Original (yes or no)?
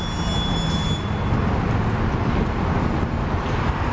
yes